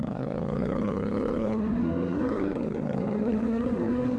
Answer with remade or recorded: remade